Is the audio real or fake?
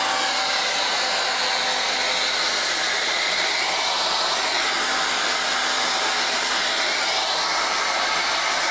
real